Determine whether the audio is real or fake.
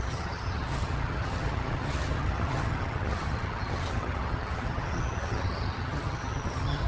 fake